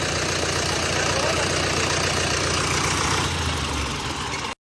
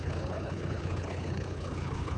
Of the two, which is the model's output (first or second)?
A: second